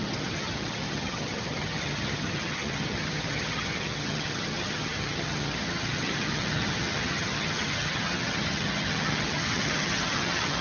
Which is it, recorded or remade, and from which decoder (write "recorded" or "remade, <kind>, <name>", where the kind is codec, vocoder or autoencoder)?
remade, vocoder, HiFi-GAN